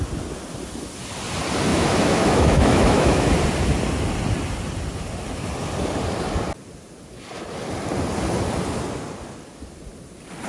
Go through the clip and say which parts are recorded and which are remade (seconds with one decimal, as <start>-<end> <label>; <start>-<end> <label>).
0.0-1.7 recorded; 1.7-3.3 remade; 3.3-10.5 recorded